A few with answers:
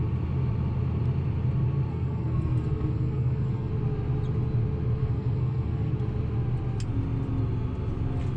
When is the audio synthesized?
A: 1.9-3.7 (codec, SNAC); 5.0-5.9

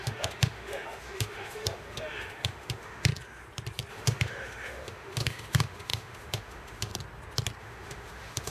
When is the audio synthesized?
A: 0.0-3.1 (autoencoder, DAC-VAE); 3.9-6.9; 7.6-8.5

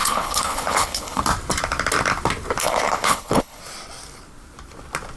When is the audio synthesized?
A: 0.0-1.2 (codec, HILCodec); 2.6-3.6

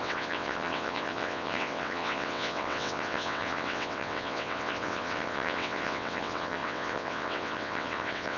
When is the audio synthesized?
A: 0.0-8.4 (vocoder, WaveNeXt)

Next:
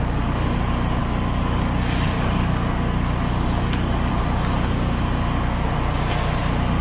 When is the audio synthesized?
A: 1.0-4.1 (codec, DAC)